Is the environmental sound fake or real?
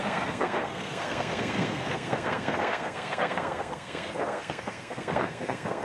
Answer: fake